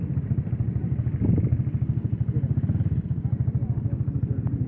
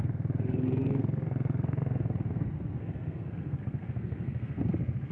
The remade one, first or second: second